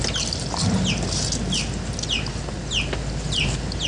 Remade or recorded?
recorded